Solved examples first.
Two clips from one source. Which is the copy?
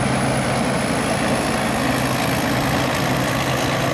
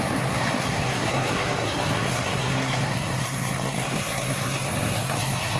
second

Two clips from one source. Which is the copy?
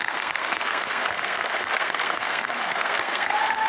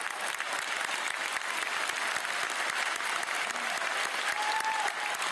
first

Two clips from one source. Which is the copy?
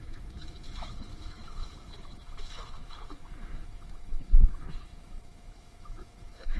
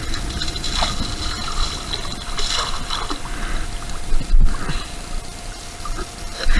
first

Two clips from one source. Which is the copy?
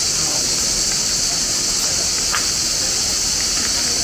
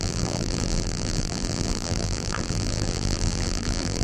second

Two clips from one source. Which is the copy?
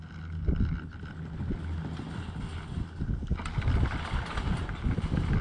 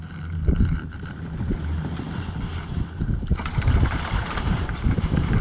second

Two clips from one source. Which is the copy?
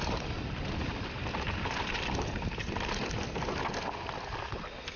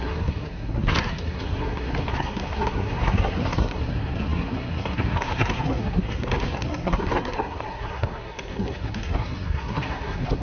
second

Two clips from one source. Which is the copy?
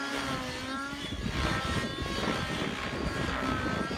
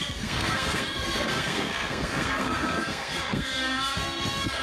second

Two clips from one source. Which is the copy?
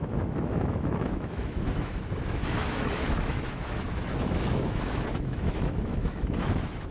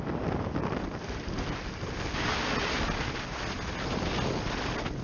first